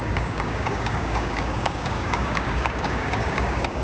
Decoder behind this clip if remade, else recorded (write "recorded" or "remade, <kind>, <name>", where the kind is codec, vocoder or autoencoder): remade, codec, DAC